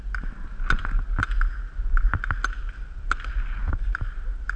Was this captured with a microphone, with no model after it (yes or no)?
yes